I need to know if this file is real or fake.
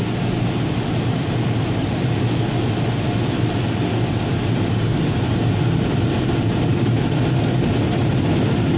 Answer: real